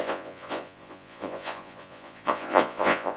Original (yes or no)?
no